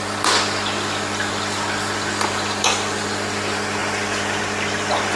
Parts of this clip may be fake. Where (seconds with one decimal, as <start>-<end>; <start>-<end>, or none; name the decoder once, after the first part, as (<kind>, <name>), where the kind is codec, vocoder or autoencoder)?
none